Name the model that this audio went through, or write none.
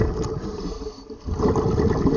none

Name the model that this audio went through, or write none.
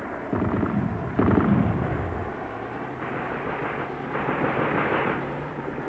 none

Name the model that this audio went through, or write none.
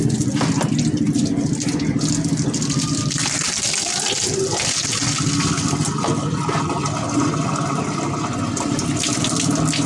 none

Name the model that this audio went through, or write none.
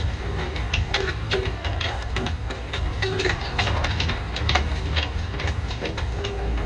codec, DAC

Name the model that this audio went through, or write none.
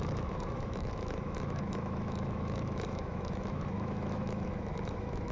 autoencoder, DAC-VAE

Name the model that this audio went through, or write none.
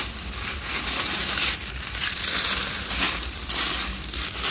vocoder, BigVGAN v2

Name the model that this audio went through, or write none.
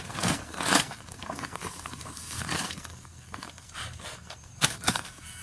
codec, SNAC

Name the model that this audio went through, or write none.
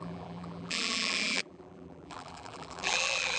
vocoder, BigVGAN v2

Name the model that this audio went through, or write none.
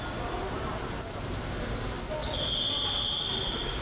none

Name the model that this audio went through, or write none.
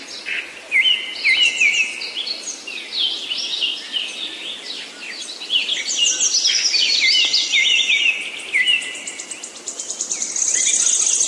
none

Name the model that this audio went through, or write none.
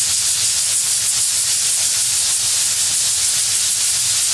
none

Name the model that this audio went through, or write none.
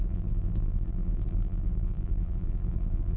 vocoder, BigVGAN v2